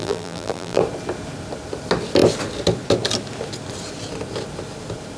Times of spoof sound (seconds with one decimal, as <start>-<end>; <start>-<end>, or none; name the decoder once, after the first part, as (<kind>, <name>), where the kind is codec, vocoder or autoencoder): 0.0-0.8 (vocoder, BigVGAN v2)